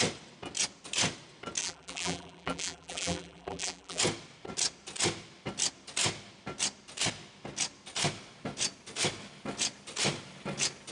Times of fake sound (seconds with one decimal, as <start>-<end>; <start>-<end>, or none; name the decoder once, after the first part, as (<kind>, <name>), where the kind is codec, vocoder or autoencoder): 1.6-4.0 (vocoder, BigVGAN v2)